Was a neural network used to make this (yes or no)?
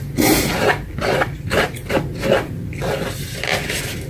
no